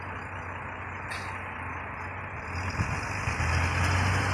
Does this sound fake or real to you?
real